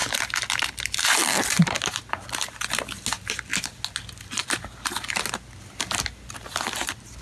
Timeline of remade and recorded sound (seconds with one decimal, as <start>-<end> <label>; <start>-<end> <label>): 0.0-7.2 recorded